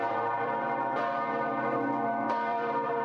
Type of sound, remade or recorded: remade